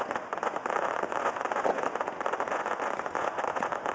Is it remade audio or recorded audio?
remade